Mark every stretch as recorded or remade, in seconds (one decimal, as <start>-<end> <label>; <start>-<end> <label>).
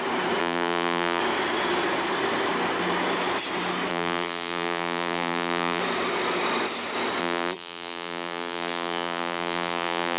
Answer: 0.0-0.4 recorded; 0.4-1.2 remade; 1.2-3.9 recorded; 3.9-5.8 remade; 5.8-7.2 recorded; 7.2-10.2 remade